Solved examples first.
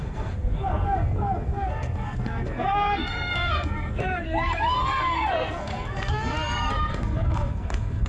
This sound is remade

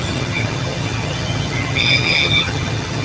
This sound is remade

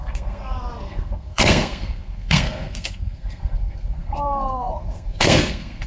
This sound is remade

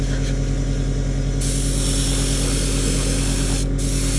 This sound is recorded